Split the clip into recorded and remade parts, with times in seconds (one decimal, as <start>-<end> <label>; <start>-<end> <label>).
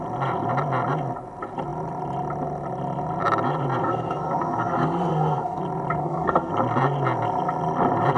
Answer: 0.0-3.8 recorded; 3.8-5.6 remade; 5.6-6.0 recorded; 6.0-6.5 remade; 6.5-8.2 recorded